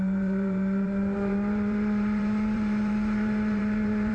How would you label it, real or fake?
fake